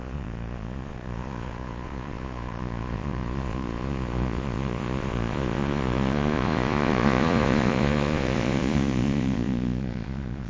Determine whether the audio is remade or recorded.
remade